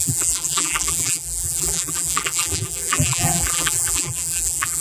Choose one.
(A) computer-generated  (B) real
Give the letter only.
A